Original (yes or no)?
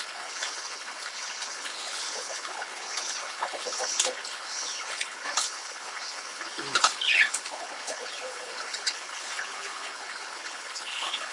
no